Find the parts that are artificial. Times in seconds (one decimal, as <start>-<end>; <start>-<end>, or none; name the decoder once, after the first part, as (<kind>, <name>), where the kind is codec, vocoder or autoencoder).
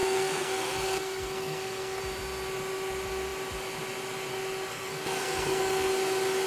0.0-2.0 (codec, SNAC); 4.7-5.9